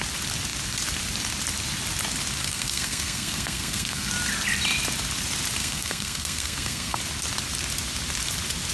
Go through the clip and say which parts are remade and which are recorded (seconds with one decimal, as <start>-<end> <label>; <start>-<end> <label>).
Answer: 0.0-2.4 recorded; 2.4-4.1 remade; 4.1-5.6 recorded; 5.6-7.0 remade; 7.0-8.7 recorded